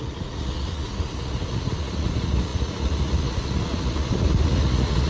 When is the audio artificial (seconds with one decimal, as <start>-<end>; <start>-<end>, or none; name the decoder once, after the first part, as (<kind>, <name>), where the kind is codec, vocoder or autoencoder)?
0.0-5.1 (vocoder, Vocos)

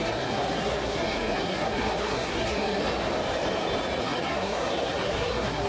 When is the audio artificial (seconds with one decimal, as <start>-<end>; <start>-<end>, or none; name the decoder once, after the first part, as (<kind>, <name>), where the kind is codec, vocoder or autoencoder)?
0.0-2.8 (codec, SNAC); 4.0-5.7

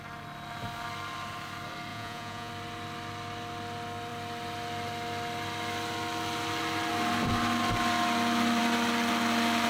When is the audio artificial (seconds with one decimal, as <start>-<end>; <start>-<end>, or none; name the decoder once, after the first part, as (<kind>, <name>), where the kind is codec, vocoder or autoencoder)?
1.9-2.5 (vocoder, Vocos)

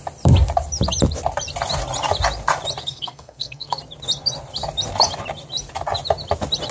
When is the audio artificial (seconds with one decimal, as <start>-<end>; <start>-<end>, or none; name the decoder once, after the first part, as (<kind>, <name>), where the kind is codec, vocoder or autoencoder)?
2.8-3.8 (codec, SNAC)

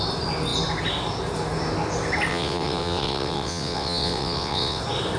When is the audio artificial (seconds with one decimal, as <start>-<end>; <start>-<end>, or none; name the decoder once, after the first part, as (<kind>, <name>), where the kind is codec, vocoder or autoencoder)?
2.3-4.8 (vocoder, WaveNeXt)

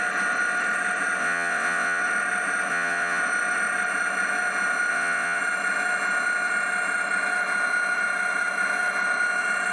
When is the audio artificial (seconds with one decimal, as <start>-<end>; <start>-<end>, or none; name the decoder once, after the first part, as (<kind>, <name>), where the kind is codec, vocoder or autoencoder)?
1.2-2.0 (vocoder, WaveNeXt); 2.7-3.2; 4.9-5.4

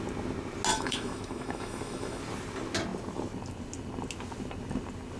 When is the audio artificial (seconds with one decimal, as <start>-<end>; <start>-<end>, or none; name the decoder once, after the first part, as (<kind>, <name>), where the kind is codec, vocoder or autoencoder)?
0.7-2.2 (autoencoder, DAC-VAE)